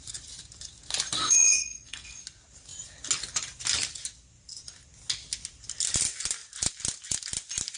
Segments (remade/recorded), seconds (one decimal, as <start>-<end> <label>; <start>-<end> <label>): 0.0-1.2 recorded; 1.2-2.2 remade; 2.2-7.8 recorded